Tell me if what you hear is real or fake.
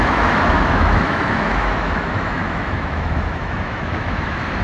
fake